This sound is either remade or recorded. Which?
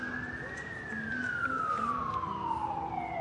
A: recorded